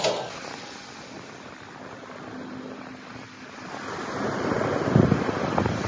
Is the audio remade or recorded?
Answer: recorded